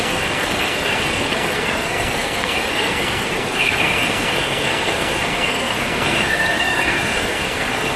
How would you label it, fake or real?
fake